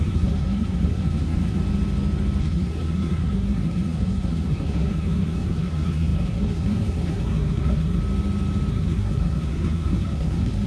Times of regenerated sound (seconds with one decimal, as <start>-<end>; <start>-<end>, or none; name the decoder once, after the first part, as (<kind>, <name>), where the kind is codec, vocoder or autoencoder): 0.0-1.6 (codec, SNAC); 2.4-8.0; 8.7-10.7